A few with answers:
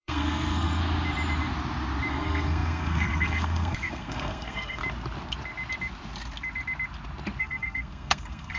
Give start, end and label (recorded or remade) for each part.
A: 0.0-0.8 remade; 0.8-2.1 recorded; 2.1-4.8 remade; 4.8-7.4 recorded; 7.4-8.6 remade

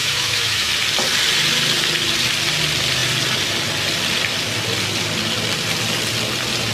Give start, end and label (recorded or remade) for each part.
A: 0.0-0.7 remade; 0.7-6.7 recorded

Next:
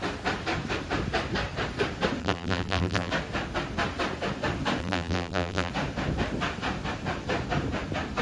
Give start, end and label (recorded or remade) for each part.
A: 0.0-2.2 recorded; 2.2-3.1 remade; 3.1-4.8 recorded; 4.8-5.7 remade; 5.7-8.2 recorded